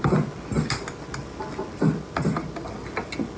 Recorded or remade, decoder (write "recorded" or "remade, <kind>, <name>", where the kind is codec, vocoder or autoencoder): recorded